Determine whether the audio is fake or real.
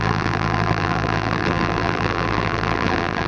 fake